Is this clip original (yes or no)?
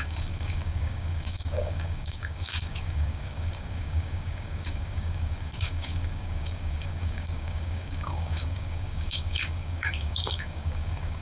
no